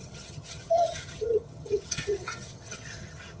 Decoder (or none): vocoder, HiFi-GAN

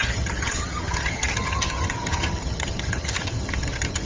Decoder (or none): vocoder, HiFi-GAN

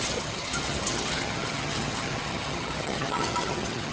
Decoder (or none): vocoder, HiFi-GAN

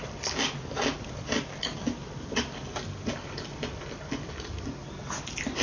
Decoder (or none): none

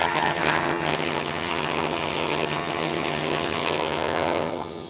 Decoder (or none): vocoder, HiFi-GAN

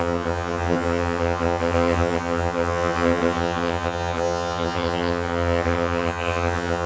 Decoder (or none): vocoder, HiFi-GAN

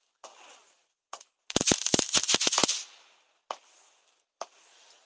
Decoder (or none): none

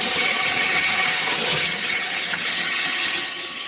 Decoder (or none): vocoder, HiFi-GAN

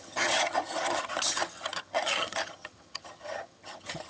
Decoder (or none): vocoder, HiFi-GAN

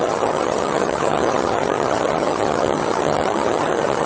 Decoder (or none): vocoder, HiFi-GAN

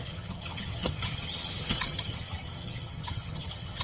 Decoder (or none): vocoder, HiFi-GAN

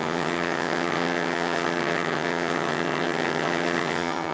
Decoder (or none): vocoder, HiFi-GAN